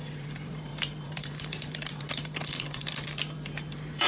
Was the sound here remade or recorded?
remade